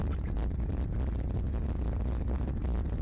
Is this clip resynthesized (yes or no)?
no